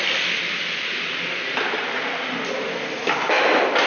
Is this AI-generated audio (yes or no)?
no